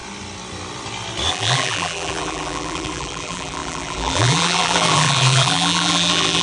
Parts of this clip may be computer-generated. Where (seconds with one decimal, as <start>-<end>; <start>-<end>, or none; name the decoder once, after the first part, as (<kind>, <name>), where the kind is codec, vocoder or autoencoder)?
1.3-6.4 (vocoder, BigVGAN v2)